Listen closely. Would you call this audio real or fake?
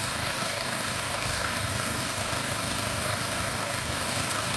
fake